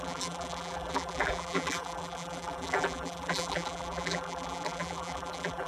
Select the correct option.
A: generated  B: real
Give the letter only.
A